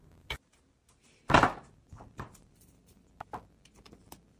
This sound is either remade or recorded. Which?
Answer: recorded